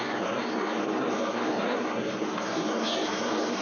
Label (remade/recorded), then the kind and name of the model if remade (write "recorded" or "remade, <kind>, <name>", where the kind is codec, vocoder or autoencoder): remade, codec, SNAC